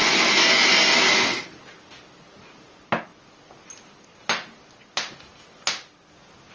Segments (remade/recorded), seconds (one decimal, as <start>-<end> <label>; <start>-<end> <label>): 0.0-6.5 recorded